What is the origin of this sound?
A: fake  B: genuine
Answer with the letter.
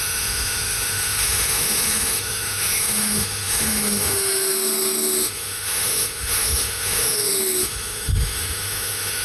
A